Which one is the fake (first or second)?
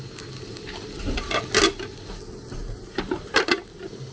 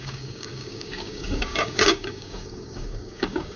second